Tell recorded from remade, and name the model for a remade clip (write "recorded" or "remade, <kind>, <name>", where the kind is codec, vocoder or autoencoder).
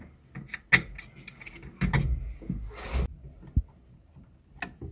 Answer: recorded